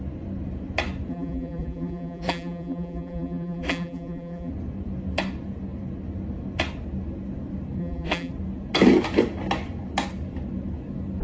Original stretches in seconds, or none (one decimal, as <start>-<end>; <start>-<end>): 0.0-1.1; 4.5-7.8; 8.3-11.2